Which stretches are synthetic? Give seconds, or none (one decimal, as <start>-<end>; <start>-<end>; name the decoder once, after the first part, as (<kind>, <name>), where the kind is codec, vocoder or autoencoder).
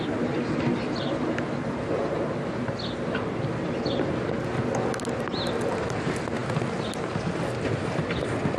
none